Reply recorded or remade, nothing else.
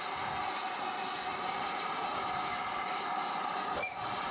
recorded